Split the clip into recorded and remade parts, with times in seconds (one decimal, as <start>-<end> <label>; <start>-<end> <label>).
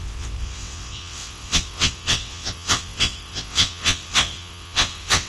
0.0-5.3 remade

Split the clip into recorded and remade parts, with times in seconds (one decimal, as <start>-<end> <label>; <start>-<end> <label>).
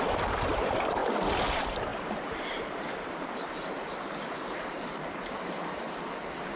0.0-1.0 remade; 1.0-1.5 recorded; 1.5-6.6 remade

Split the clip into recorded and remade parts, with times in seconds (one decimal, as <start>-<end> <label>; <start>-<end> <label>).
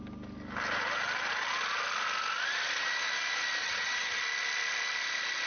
0.0-3.6 recorded; 3.6-4.2 remade; 4.2-5.5 recorded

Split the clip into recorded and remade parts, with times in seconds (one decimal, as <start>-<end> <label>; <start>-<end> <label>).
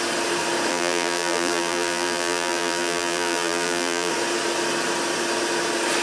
0.0-0.7 recorded; 0.7-4.1 remade; 4.1-6.0 recorded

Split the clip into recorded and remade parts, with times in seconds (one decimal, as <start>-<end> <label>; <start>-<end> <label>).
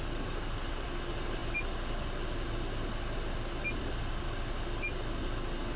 0.0-5.8 recorded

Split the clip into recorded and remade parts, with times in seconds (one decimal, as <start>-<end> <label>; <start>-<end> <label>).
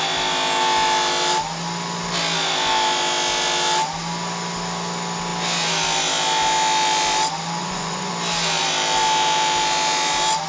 0.0-7.6 recorded; 7.6-8.1 remade; 8.1-10.5 recorded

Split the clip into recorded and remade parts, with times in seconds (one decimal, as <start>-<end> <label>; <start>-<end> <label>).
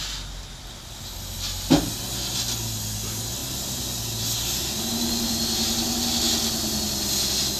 0.0-7.6 recorded